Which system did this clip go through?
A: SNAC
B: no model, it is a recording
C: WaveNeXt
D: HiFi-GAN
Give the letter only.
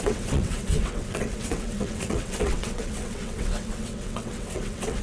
C